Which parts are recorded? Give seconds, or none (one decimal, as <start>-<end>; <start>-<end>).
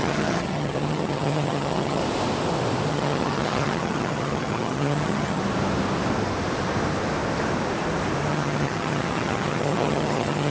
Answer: 2.0-2.9; 5.4-8.3